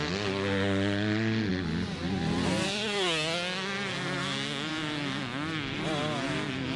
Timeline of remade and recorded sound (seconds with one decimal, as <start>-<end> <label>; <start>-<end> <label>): 0.0-6.8 recorded